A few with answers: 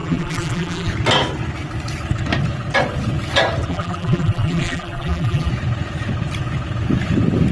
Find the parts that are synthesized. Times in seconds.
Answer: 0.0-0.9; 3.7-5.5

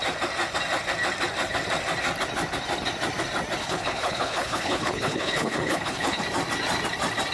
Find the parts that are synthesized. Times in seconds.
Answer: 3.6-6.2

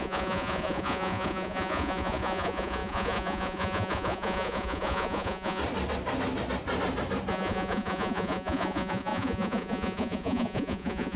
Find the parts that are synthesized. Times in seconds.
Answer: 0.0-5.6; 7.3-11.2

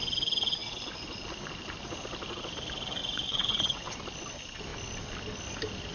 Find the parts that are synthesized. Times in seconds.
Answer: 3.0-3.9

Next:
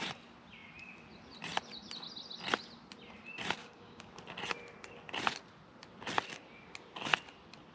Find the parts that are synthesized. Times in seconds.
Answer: 3.6-4.1

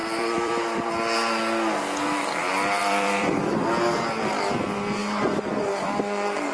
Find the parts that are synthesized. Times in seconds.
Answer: 0.0-0.9; 2.8-3.5; 5.0-6.0

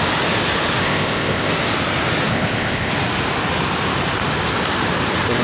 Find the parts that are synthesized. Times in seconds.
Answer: 0.8-1.5; 2.3-2.9